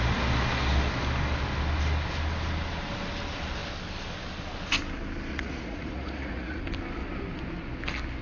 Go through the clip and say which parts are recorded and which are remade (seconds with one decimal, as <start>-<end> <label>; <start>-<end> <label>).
0.0-5.3 recorded; 5.3-6.6 remade; 6.6-8.2 recorded